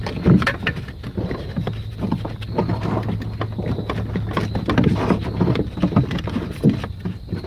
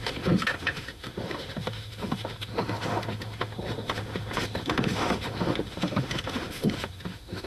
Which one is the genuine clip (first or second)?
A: first